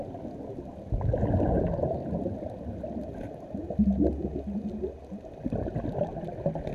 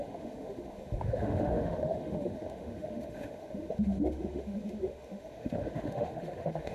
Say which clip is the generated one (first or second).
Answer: second